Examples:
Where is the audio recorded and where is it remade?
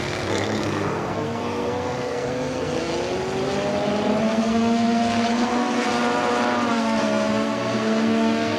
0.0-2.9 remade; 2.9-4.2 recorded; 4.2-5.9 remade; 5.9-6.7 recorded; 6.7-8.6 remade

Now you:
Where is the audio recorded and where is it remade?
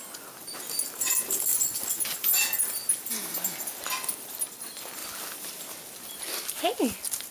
0.0-7.3 recorded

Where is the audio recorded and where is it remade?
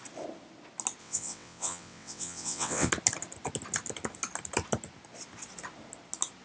0.0-1.0 recorded; 1.0-2.9 remade; 2.9-6.4 recorded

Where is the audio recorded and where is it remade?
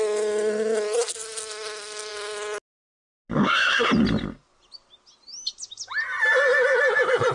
0.0-3.4 recorded; 3.4-3.9 remade; 3.9-7.3 recorded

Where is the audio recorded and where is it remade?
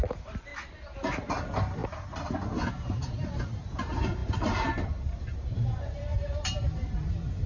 0.0-0.5 remade; 0.5-1.3 recorded; 1.3-1.8 remade; 1.8-2.7 recorded; 2.7-7.5 remade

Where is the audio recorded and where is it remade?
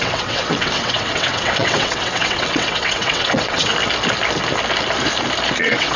0.0-3.7 remade; 3.7-5.6 recorded; 5.6-6.0 remade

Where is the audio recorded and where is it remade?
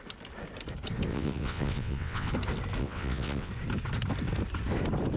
0.0-1.1 recorded; 1.1-2.3 remade; 2.3-2.8 recorded; 2.8-3.5 remade; 3.5-5.2 recorded